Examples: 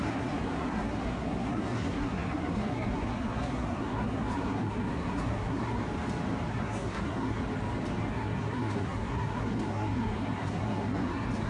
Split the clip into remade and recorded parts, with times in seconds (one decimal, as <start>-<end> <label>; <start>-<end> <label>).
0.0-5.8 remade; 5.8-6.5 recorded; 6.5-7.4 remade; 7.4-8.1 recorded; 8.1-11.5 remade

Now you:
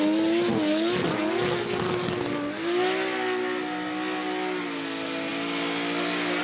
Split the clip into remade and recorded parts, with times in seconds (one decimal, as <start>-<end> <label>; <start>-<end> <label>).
0.0-6.4 recorded

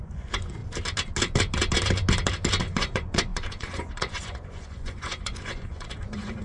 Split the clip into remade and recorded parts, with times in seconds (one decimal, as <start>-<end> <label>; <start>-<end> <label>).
0.0-0.6 remade; 0.6-2.6 recorded; 2.6-6.4 remade

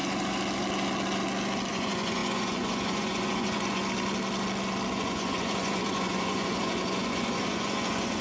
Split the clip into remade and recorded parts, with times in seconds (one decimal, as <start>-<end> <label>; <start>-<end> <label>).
0.0-1.7 recorded; 1.7-3.8 remade; 3.8-4.9 recorded; 4.9-8.2 remade

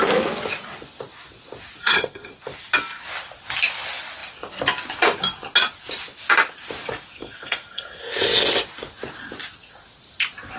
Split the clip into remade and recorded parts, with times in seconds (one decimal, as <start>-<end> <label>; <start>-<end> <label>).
0.0-1.8 recorded; 1.8-2.3 remade; 2.3-7.2 recorded; 7.2-8.0 remade; 8.0-10.6 recorded

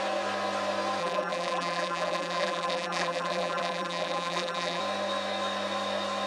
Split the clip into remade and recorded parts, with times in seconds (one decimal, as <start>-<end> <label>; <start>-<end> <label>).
0.0-1.0 recorded; 1.0-4.8 remade; 4.8-6.3 recorded